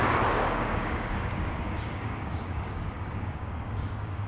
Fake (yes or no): yes